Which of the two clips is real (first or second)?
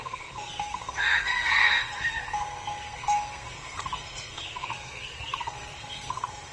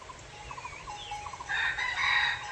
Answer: second